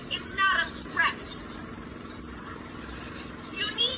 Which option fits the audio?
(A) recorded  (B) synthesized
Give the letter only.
B